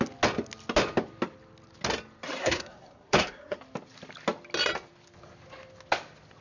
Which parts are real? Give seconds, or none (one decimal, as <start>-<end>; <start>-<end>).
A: 0.0-2.4; 3.6-6.4